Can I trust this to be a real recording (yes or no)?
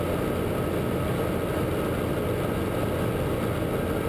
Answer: yes